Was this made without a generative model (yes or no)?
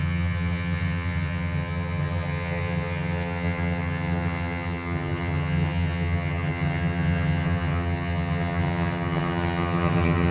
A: no